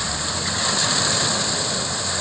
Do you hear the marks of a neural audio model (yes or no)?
no